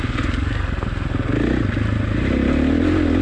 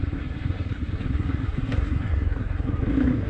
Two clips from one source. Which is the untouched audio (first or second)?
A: first